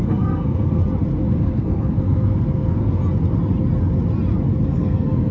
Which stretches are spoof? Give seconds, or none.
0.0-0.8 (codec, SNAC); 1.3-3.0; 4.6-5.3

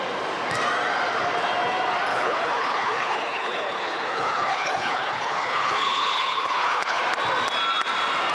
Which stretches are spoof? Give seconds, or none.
2.1-7.0 (codec, HILCodec)

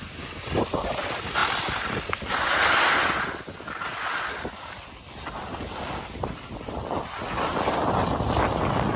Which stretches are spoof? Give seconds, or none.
none

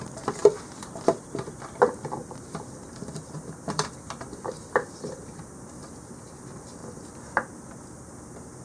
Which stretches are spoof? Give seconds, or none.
0.4-5.4 (vocoder, BigVGAN v2); 6.8-7.7

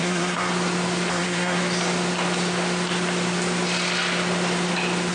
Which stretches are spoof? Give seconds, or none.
0.0-0.5 (codec, SNAC); 1.1-1.6

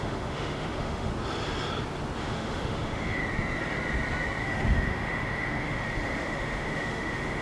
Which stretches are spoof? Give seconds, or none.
0.0-1.1 (autoencoder, DAC-VAE); 2.2-3.2; 4.4-7.4

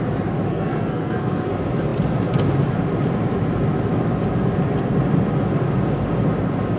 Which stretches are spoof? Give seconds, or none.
0.5-1.5 (codec, SNAC)

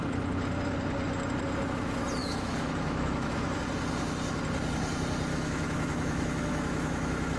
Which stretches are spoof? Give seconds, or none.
2.2-3.6 (autoencoder, DAC-VAE); 5.3-7.4